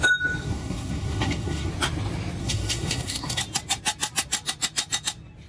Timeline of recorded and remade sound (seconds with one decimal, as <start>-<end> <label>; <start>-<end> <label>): 0.0-0.4 recorded; 0.4-1.7 remade; 1.7-2.4 recorded; 2.4-3.4 remade; 3.4-5.5 recorded